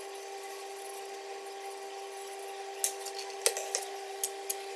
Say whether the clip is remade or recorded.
recorded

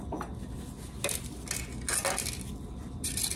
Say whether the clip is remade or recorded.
recorded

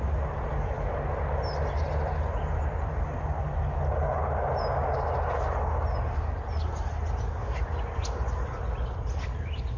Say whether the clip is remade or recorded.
recorded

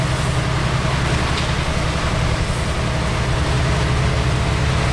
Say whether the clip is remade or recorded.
recorded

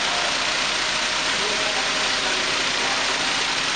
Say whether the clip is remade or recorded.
recorded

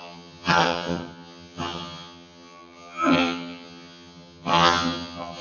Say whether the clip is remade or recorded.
remade